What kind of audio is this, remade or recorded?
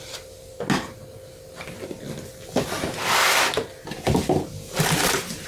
recorded